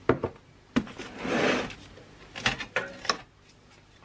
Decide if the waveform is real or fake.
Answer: real